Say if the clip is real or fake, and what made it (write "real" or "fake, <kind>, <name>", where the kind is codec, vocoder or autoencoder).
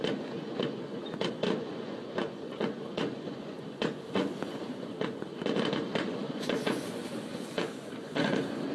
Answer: fake, vocoder, Vocos